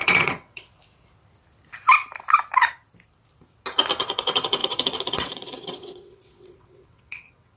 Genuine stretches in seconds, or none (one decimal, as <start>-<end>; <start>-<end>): 0.8-4.0